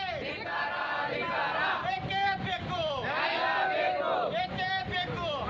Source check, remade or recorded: recorded